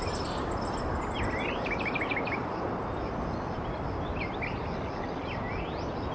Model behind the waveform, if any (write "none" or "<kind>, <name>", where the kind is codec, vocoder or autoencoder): none